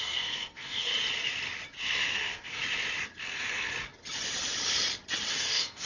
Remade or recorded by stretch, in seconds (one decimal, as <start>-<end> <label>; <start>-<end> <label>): 0.0-0.9 remade; 0.9-1.8 recorded; 1.8-2.6 remade; 2.6-3.2 recorded; 3.2-3.7 remade; 3.7-5.3 recorded; 5.3-5.9 remade